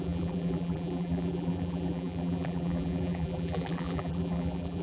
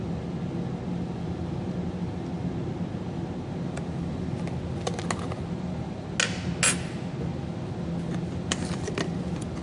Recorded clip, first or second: second